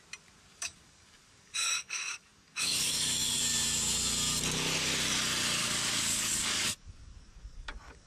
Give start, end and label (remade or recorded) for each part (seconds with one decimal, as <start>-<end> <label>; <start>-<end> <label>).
0.0-0.5 recorded; 0.5-3.4 remade; 3.4-5.6 recorded; 5.6-8.1 remade